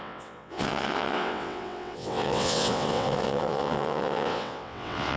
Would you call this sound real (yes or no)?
no